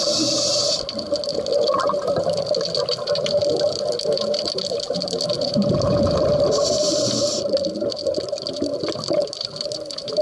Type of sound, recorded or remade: recorded